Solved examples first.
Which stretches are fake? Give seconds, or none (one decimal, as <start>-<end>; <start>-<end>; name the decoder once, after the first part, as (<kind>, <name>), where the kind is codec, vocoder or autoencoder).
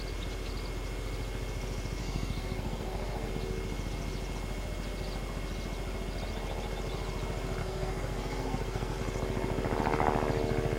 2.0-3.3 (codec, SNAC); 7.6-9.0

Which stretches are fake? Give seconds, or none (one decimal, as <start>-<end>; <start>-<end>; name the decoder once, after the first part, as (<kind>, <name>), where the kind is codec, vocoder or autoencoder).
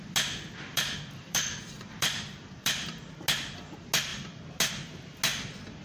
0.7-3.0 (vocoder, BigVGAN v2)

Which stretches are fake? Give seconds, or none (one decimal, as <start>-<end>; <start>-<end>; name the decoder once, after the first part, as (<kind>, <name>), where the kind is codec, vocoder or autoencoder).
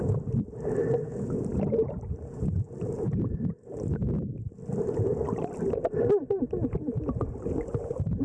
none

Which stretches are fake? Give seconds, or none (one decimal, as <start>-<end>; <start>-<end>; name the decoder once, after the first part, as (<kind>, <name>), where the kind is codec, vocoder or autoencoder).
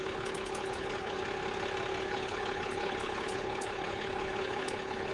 0.0-1.2 (codec, HILCodec); 2.0-5.1